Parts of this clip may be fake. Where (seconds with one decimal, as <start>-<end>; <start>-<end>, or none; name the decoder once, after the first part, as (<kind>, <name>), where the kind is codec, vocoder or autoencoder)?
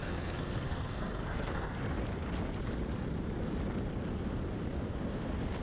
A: 0.0-1.8 (codec, SNAC)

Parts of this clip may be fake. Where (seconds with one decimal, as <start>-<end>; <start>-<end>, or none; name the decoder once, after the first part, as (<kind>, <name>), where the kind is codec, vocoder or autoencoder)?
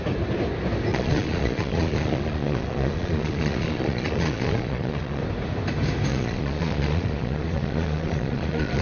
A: 0.9-5.2 (vocoder, Vocos); 6.1-8.8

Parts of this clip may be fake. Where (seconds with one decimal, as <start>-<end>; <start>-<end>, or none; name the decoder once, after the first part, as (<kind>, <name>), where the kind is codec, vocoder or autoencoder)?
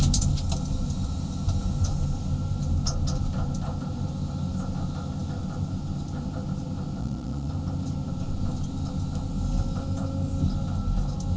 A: 7.0-7.5 (vocoder, Vocos)